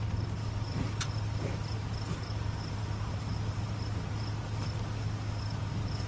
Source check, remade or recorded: recorded